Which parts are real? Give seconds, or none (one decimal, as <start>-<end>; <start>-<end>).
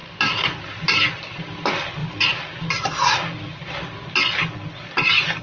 0.0-5.4